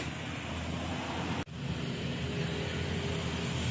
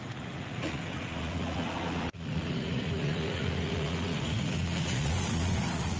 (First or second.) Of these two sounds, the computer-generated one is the second